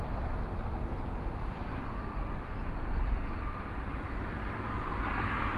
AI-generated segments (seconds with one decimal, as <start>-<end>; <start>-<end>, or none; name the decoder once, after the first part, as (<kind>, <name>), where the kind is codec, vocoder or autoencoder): none